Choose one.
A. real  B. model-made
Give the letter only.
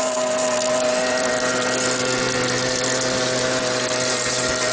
A